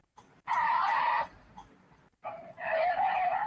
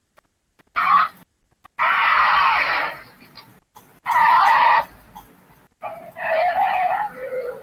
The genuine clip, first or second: second